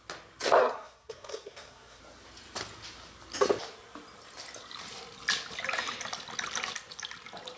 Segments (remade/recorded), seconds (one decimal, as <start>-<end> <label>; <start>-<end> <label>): 0.0-0.6 recorded; 0.6-2.0 remade; 2.0-7.6 recorded